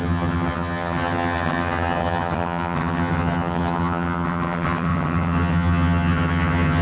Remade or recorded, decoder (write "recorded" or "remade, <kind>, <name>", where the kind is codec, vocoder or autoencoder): remade, vocoder, HiFi-GAN